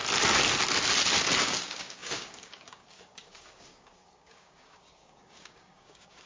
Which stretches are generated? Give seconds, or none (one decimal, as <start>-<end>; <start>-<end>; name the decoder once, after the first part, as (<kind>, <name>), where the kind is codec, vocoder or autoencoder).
1.4-6.3 (codec, DAC)